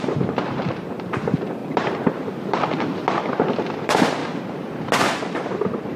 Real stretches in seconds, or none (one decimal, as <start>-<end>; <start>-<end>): 3.0-3.8; 4.2-5.3